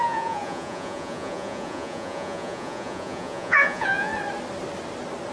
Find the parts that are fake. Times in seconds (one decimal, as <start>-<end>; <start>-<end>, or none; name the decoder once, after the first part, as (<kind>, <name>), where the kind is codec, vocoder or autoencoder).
0.0-4.1 (vocoder, Vocos)